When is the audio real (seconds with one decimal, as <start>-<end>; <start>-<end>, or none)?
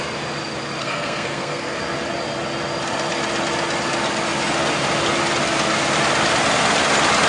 0.0-0.8; 1.8-7.3